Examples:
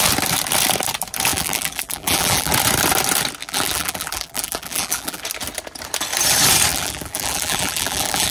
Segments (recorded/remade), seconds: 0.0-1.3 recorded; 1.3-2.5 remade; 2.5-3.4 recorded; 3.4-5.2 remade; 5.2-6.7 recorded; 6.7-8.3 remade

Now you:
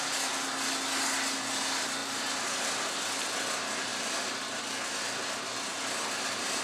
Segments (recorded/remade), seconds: 0.0-2.0 recorded; 2.0-2.9 remade; 2.9-3.9 recorded; 3.9-4.6 remade; 4.6-6.6 recorded